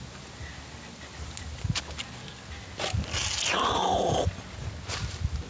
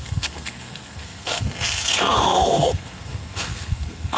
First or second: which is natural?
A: first